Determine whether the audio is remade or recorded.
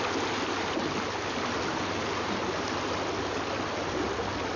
recorded